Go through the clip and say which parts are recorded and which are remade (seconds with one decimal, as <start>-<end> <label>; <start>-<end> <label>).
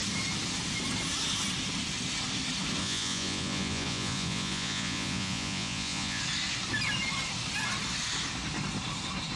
0.0-2.8 recorded; 2.8-6.2 remade; 6.2-9.4 recorded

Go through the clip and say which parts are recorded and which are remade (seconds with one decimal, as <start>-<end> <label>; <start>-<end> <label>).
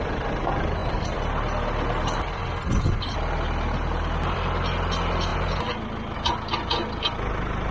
0.0-7.7 recorded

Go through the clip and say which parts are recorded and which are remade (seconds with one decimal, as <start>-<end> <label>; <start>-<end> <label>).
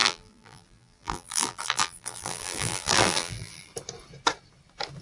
0.0-3.7 remade; 3.7-5.0 recorded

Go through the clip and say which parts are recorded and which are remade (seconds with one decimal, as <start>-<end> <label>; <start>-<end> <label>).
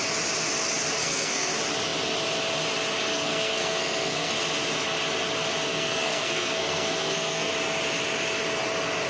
0.0-1.0 recorded; 1.0-1.5 remade; 1.5-3.1 recorded; 3.1-4.3 remade; 4.3-5.7 recorded; 5.7-7.5 remade; 7.5-9.1 recorded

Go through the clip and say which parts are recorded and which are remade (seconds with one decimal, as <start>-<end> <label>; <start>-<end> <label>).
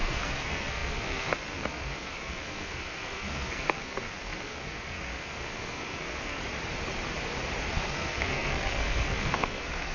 0.0-6.4 remade; 6.4-7.7 recorded; 7.7-9.9 remade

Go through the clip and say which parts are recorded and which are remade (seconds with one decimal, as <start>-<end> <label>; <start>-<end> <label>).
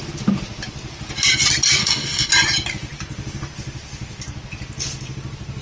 0.0-1.8 recorded; 1.8-2.3 remade; 2.3-5.6 recorded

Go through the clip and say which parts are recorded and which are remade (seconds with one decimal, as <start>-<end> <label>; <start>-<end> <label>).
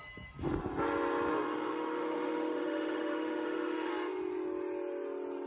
0.0-1.3 recorded; 1.3-3.9 remade; 3.9-5.5 recorded